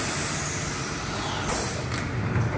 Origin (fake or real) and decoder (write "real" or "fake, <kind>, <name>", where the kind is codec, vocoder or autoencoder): real